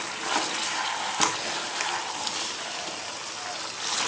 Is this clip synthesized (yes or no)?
no